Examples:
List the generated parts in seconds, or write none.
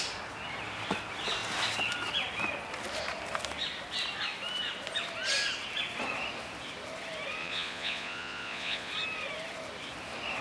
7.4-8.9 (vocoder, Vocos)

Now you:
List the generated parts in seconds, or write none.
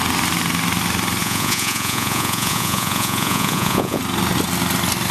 1.2-4.0 (vocoder, Vocos)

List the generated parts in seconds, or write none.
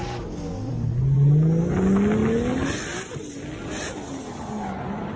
none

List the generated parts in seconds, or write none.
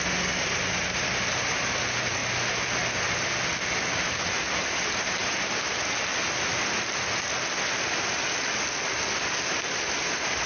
none